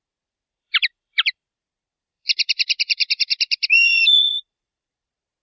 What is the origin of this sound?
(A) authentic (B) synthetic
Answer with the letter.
B